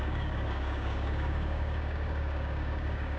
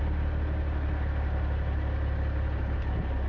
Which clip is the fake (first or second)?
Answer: first